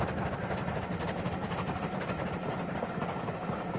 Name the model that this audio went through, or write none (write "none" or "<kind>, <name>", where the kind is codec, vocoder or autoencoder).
none